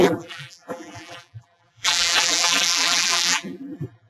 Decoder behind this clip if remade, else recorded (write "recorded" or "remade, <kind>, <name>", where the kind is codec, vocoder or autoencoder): remade, vocoder, BigVGAN v2